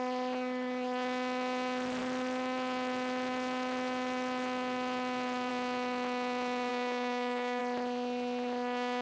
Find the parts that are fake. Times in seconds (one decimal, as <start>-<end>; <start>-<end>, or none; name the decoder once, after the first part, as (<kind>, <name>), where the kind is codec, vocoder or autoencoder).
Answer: 6.7-7.6 (codec, DAC)